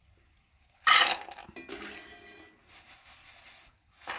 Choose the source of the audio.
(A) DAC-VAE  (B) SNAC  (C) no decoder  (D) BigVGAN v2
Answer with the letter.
C